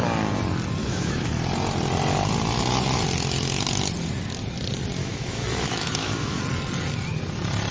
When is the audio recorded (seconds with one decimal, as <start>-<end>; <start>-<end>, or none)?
0.0-0.8; 1.3-5.0; 6.4-7.7